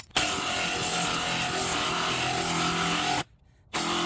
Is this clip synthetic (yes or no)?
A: no